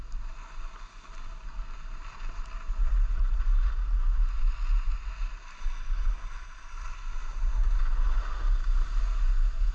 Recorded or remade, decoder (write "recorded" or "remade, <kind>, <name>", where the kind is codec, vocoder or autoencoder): recorded